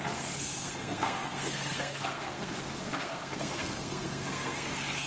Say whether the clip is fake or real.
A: fake